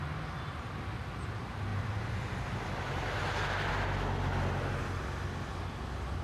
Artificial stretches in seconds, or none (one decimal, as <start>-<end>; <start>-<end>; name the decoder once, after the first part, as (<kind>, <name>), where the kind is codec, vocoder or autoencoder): none